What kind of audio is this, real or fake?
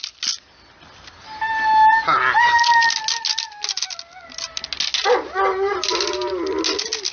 real